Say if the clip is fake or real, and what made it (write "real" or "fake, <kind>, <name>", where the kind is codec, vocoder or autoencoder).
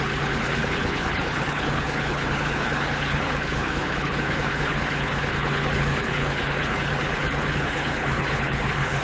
fake, codec, HILCodec